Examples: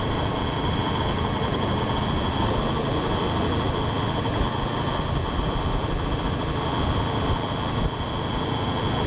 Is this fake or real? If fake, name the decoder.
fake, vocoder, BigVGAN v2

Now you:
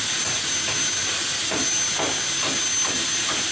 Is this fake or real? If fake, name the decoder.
real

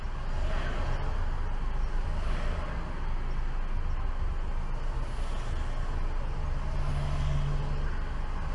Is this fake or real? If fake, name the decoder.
real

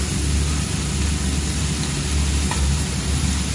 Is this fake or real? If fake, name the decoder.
real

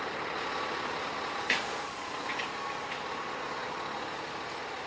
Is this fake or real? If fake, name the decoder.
real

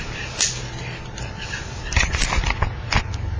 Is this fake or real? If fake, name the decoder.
fake, vocoder, BigVGAN v2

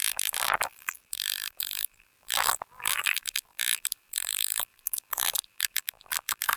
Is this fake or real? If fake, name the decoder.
fake, vocoder, BigVGAN v2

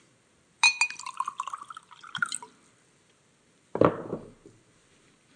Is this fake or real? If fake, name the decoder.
real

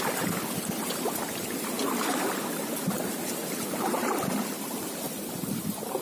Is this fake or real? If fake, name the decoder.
real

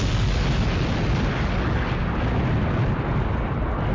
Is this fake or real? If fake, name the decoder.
real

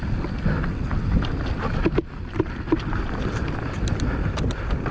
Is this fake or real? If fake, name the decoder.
fake, vocoder, BigVGAN v2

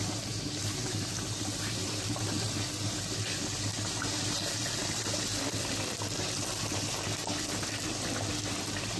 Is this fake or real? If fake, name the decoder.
real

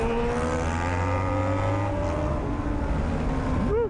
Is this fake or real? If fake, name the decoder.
real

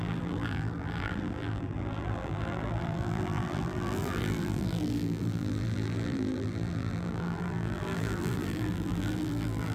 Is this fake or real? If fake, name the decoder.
fake, vocoder, BigVGAN v2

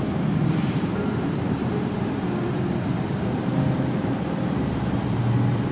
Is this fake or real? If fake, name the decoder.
fake, vocoder, BigVGAN v2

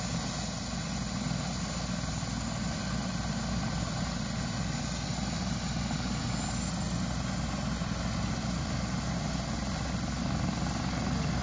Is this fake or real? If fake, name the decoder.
real